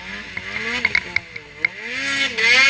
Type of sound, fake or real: real